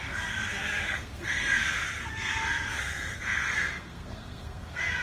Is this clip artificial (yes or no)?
yes